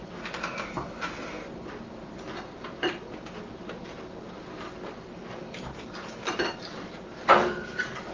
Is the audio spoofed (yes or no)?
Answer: no